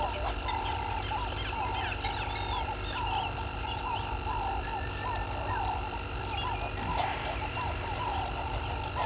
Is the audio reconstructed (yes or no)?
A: no